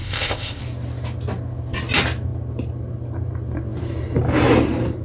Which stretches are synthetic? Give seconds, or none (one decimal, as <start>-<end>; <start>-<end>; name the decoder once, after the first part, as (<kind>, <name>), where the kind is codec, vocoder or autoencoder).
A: 0.0-0.6 (codec, ZipCodec)